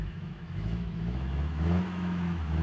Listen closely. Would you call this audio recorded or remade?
remade